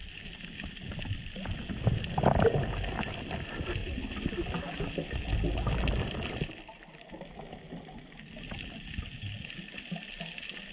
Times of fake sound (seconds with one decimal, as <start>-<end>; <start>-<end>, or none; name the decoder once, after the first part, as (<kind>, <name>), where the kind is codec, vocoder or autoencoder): none